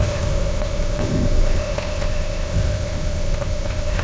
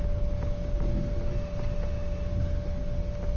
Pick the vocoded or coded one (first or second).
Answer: first